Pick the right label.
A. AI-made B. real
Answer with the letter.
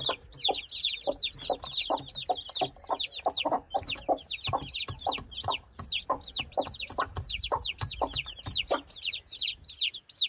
B